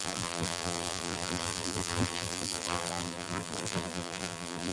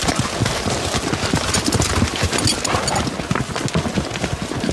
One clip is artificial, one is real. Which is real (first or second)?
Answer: second